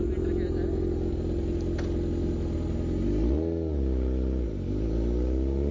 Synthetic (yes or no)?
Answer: no